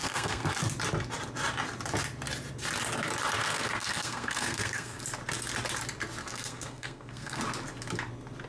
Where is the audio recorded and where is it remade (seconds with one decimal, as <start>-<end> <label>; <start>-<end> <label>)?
0.0-0.5 remade; 0.5-3.4 recorded; 3.4-5.0 remade; 5.0-6.2 recorded; 6.2-7.4 remade; 7.4-8.5 recorded